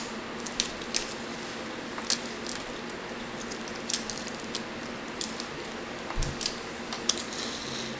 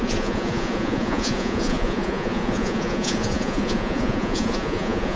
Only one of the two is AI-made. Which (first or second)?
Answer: second